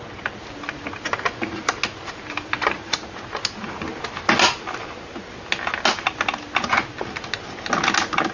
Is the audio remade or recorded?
recorded